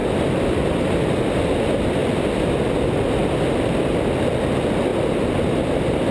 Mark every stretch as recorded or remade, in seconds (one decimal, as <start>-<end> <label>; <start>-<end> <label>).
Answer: 0.0-1.1 remade; 1.1-3.2 recorded; 3.2-4.4 remade; 4.4-6.1 recorded